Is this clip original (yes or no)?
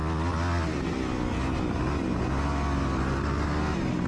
yes